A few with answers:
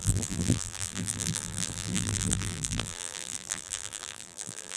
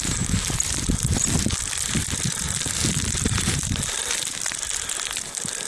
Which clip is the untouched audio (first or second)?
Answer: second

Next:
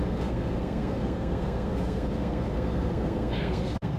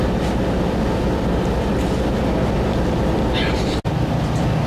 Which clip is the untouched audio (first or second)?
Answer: second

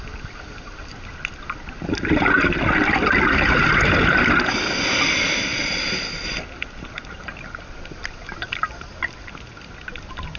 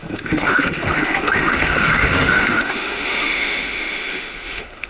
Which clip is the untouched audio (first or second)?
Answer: first